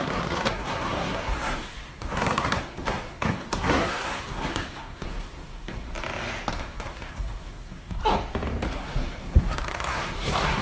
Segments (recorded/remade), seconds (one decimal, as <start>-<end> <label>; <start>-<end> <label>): 0.0-5.9 remade; 5.9-6.5 recorded; 6.5-8.0 remade; 8.0-8.7 recorded; 8.7-10.6 remade